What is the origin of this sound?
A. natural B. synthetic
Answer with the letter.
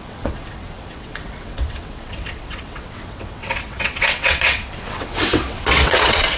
B